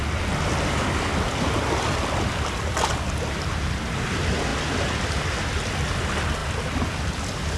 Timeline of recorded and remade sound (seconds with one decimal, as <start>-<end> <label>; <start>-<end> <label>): 0.0-7.6 recorded